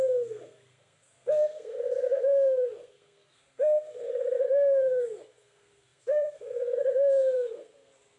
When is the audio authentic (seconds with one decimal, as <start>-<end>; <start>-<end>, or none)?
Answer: none